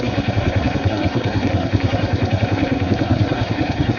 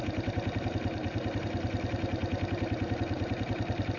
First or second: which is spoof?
first